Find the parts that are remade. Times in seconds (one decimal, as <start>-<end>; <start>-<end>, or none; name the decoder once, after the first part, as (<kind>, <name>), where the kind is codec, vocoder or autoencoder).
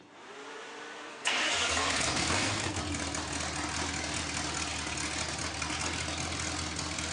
1.1-2.8 (codec, SNAC)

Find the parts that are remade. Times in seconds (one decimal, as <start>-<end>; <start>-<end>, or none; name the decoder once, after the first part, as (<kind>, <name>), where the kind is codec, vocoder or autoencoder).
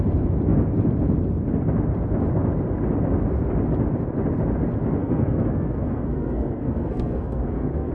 5.0-7.9 (codec, SNAC)